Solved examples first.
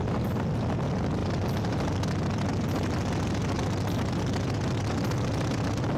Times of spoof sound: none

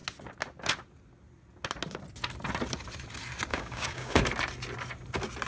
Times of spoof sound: 3.5-4.2

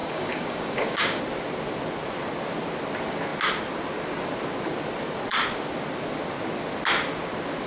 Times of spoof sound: 0.0-1.2

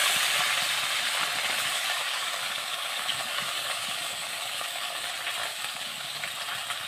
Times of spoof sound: 1.7-5.1; 5.5-6.2

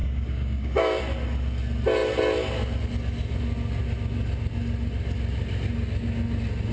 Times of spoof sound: 0.0-1.0

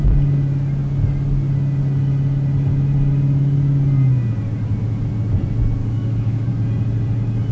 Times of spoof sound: 5.8-6.5